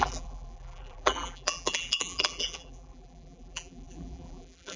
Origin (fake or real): fake